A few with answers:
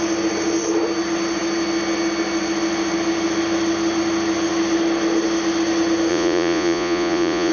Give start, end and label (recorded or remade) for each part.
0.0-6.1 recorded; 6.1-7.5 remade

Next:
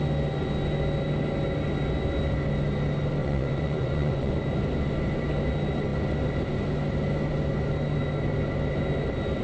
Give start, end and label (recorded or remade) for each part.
0.0-3.2 recorded; 3.2-4.3 remade; 4.3-9.4 recorded

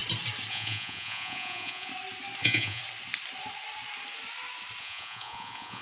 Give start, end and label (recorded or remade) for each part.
0.0-0.5 recorded; 0.5-1.9 remade; 1.9-2.4 recorded; 2.4-2.8 remade; 2.8-4.8 recorded; 4.8-5.8 remade